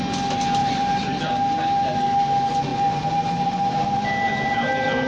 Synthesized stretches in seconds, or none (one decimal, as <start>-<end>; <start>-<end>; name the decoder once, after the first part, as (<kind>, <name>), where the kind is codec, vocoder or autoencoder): 0.6-1.2 (vocoder, BigVGAN v2)